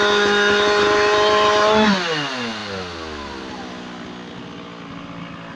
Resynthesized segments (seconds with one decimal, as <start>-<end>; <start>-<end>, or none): none